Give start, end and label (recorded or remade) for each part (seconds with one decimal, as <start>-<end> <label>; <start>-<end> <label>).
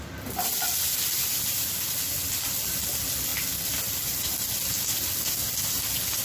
0.0-6.2 recorded